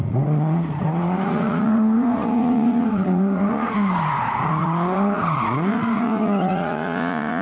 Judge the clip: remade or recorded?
remade